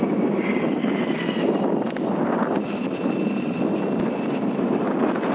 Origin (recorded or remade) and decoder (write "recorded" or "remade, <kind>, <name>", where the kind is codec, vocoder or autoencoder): recorded